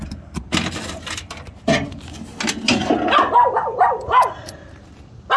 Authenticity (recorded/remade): recorded